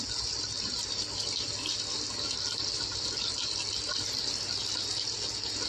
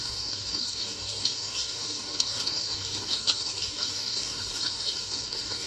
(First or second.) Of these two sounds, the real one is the first